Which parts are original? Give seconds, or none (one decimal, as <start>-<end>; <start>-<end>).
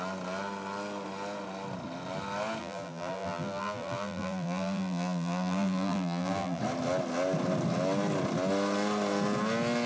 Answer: 0.0-2.6; 6.6-9.9